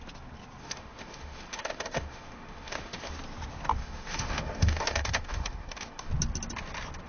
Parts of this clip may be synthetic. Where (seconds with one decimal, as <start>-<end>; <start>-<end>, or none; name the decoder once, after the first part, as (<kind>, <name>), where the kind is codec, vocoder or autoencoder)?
0.6-3.1 (autoencoder, DAC-VAE); 3.8-6.1